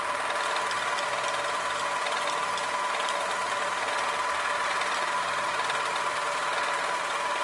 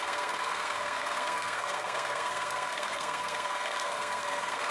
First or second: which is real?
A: first